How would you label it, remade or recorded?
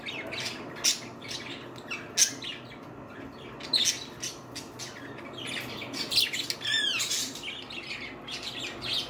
recorded